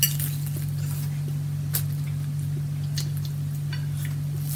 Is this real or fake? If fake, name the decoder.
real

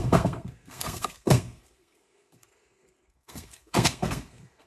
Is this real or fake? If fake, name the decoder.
fake, codec, SNAC